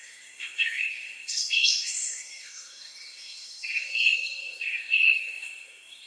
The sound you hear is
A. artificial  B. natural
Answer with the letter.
A